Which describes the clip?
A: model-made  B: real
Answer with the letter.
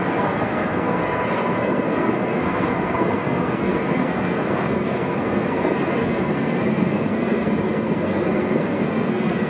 A